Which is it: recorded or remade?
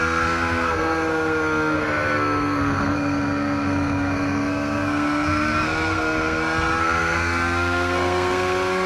remade